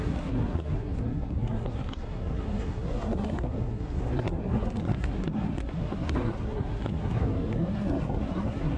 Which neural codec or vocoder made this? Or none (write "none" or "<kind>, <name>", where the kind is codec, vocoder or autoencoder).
codec, SNAC